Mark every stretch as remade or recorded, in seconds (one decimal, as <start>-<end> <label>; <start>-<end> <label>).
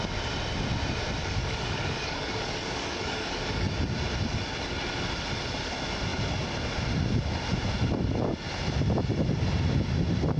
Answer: 0.0-1.2 recorded; 1.2-3.7 remade; 3.7-10.4 recorded